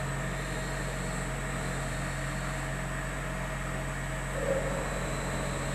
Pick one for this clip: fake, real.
real